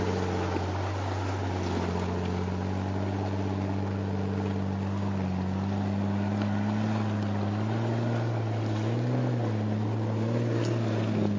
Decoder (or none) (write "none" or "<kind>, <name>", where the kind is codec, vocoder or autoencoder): none